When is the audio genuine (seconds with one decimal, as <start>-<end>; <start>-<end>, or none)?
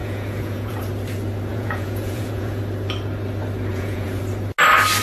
0.8-1.5; 2.6-3.7; 4.2-5.0